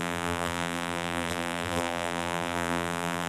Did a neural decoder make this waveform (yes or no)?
yes